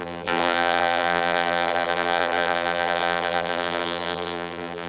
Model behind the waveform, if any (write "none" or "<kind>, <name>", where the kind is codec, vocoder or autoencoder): vocoder, BigVGAN v2